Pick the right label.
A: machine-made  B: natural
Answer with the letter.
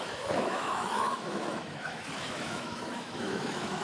A